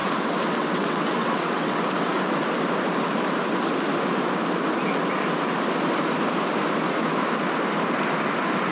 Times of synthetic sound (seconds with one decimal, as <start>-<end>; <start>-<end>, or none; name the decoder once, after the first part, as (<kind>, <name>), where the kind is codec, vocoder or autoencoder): 0.0-1.8 (vocoder, WaveNeXt)